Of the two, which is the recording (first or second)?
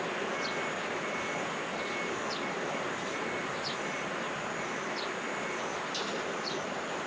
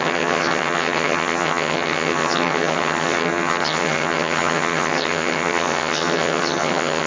first